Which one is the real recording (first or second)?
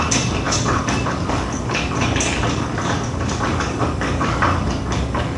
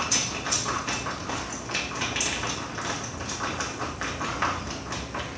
second